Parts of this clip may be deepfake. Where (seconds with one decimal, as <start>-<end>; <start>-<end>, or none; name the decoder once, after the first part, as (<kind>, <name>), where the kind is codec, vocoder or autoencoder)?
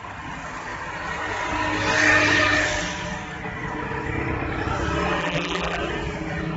5.2-5.8 (vocoder, BigVGAN v2)